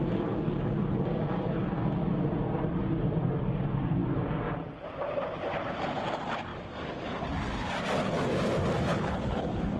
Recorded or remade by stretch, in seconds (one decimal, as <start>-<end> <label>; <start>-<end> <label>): 0.0-8.9 recorded; 8.9-9.8 remade